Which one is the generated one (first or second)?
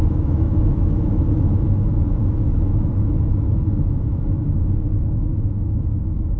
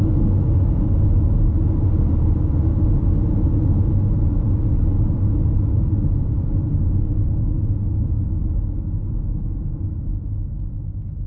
first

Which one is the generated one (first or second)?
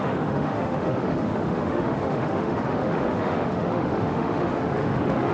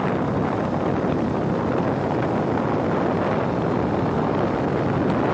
first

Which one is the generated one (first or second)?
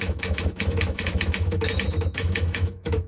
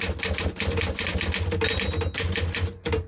first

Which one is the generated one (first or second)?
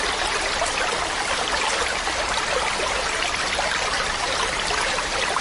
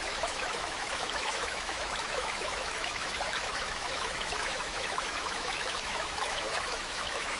second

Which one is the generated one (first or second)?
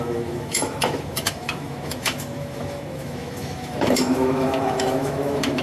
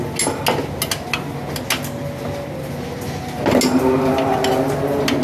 first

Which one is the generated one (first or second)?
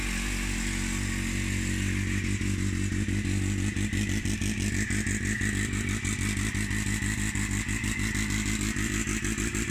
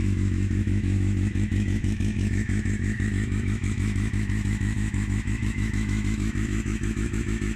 second